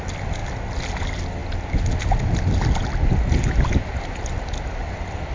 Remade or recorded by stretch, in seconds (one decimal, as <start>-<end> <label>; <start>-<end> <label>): 0.0-5.3 recorded